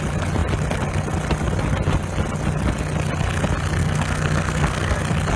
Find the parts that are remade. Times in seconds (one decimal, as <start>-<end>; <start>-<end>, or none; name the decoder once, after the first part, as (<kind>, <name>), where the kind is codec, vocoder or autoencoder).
3.8-5.0 (codec, SNAC)